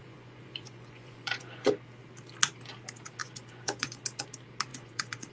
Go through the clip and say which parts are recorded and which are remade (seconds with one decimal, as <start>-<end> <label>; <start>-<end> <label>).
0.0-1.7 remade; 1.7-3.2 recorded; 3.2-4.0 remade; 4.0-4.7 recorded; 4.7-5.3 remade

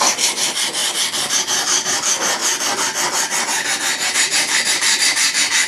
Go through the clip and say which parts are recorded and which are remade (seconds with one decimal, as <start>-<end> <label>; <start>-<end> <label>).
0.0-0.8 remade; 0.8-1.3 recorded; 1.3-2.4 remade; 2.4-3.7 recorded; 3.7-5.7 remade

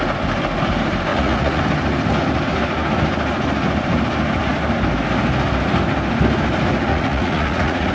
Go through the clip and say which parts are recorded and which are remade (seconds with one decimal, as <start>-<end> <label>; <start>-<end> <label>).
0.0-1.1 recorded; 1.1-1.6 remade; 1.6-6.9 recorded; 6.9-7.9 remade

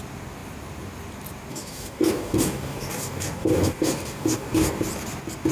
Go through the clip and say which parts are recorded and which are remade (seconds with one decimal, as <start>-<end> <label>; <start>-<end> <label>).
0.0-1.5 recorded; 1.5-4.8 remade; 4.8-5.5 recorded

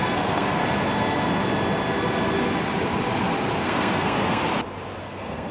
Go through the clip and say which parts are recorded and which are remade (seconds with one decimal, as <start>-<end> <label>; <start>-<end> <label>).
0.0-0.6 remade; 0.6-3.6 recorded; 3.6-4.4 remade; 4.4-5.0 recorded; 5.0-5.5 remade